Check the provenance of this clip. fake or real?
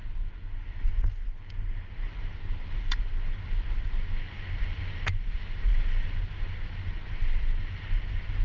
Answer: real